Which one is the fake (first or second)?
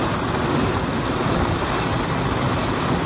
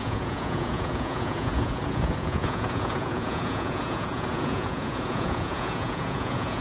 second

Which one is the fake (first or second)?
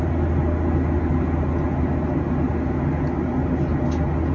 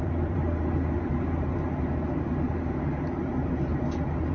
second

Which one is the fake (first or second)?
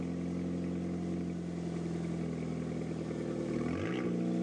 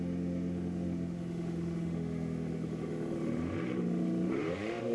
second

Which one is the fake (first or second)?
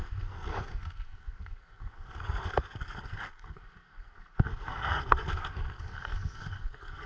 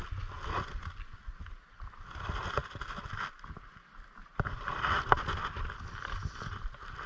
first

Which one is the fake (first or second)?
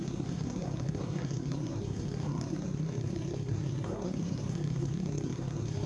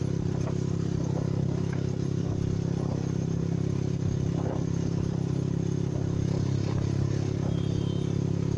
first